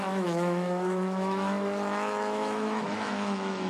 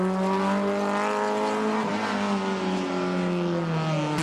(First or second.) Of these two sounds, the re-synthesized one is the first